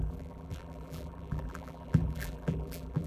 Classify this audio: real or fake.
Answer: fake